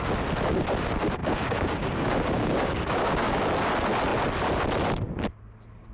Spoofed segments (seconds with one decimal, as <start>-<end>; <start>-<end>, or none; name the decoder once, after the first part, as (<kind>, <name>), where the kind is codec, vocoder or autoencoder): 1.2-3.4 (codec, DAC)